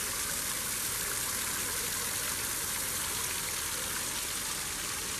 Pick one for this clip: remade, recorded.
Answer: recorded